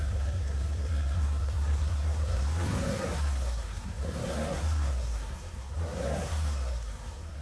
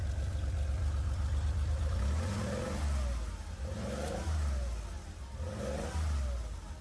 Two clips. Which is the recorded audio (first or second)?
second